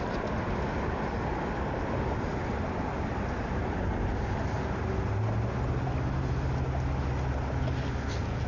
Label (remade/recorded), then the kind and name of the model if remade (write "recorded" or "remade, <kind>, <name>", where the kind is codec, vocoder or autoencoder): recorded